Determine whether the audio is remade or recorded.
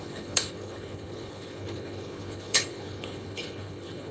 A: remade